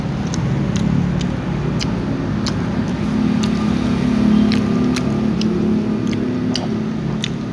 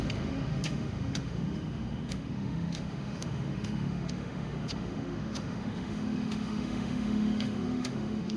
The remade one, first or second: second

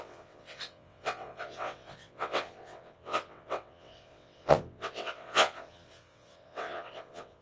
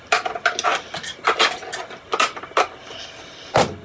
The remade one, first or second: first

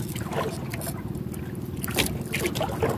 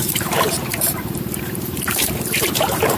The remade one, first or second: second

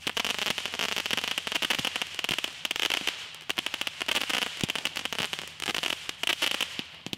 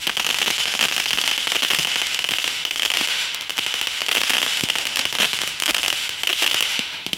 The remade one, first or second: second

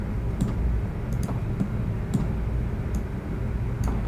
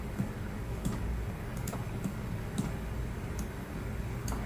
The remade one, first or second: second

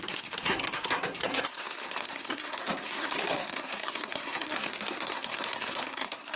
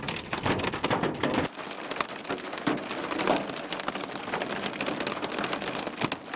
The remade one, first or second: first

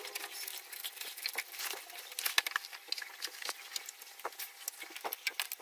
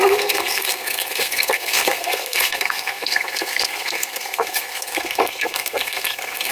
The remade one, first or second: second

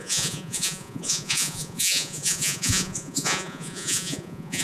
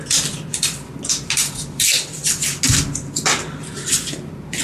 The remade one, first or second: first